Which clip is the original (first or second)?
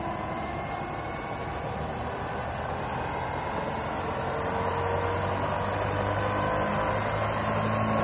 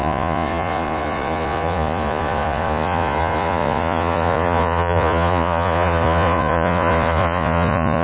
first